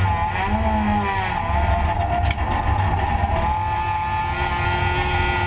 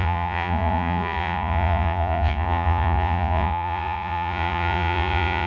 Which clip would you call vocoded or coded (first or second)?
second